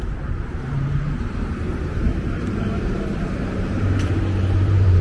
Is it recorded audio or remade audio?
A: remade